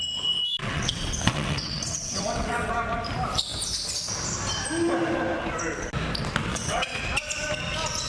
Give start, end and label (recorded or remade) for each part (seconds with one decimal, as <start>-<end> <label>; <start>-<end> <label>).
0.0-0.6 recorded; 0.6-2.7 remade; 2.7-6.5 recorded; 6.5-7.0 remade; 7.0-8.1 recorded